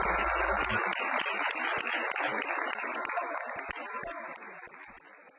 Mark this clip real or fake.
real